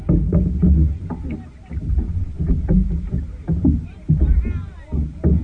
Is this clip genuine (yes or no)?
yes